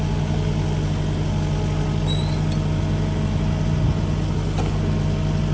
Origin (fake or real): real